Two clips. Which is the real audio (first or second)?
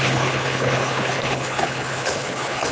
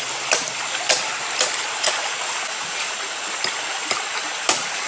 second